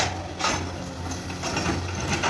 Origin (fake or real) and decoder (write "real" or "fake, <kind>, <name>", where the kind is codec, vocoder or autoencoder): real